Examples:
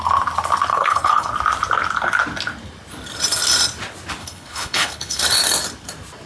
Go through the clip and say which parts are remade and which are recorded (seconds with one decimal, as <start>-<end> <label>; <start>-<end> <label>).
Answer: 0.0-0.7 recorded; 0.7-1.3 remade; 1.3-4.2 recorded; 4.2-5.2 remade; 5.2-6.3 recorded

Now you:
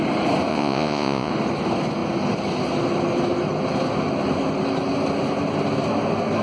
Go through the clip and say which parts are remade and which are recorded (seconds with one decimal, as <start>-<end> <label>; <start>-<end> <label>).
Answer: 0.0-0.5 recorded; 0.5-1.3 remade; 1.3-6.4 recorded

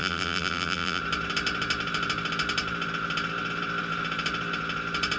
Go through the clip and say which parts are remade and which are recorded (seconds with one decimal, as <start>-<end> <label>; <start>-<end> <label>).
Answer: 0.0-1.0 remade; 1.0-5.2 recorded